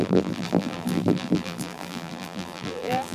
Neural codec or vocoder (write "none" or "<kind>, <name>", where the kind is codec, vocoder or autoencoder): vocoder, BigVGAN v2